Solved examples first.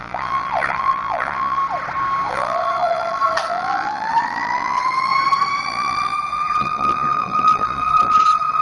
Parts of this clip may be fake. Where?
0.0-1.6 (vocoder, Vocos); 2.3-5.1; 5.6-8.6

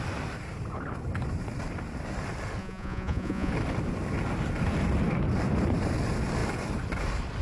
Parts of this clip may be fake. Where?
2.6-3.5 (vocoder, Vocos)